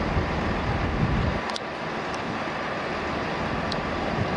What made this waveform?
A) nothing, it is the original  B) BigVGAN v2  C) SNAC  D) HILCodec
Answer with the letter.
A